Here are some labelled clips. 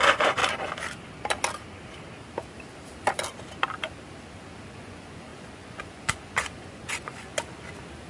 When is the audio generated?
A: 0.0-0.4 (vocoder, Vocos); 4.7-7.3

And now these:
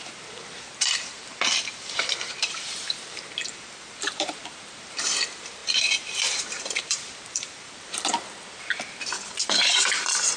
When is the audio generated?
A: 0.0-8.1 (vocoder, BigVGAN v2); 9.4-10.4